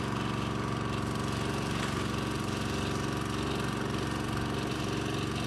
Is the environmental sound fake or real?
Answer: real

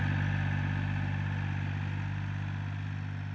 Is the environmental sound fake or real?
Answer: real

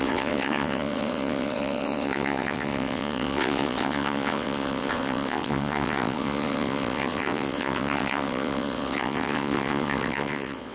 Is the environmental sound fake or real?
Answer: fake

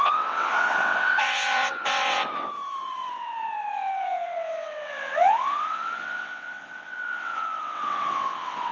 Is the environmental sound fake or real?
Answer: fake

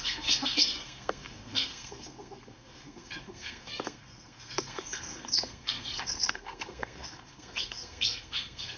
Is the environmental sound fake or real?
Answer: fake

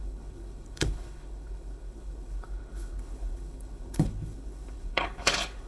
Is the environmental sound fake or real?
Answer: fake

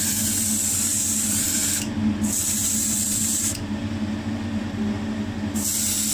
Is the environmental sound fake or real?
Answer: real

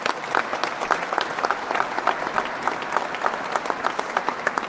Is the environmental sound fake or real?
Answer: real